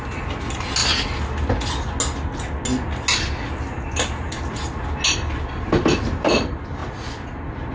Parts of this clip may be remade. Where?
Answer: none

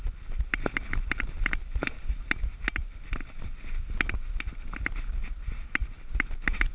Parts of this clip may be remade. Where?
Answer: none